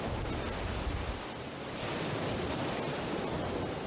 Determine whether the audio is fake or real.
real